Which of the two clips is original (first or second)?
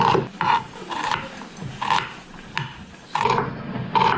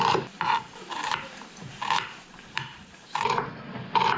first